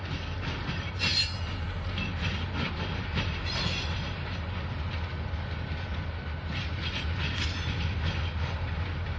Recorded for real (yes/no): yes